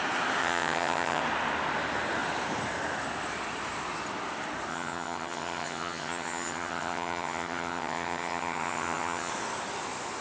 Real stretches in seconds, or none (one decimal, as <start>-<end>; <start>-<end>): 0.0-0.4; 1.2-4.7; 9.3-10.2